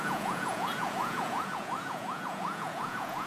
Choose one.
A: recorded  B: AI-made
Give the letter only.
B